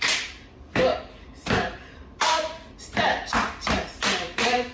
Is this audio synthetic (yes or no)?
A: yes